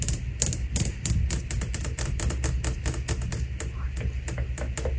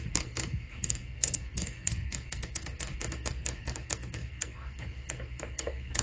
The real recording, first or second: first